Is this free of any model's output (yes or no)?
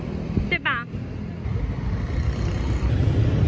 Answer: yes